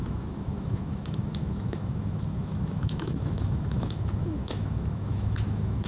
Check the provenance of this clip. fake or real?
fake